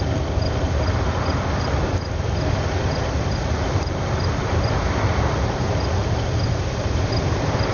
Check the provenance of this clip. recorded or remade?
remade